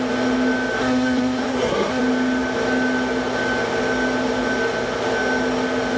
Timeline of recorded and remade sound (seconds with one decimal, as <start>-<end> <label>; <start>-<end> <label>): 0.0-0.8 recorded; 0.8-2.0 remade; 2.0-6.0 recorded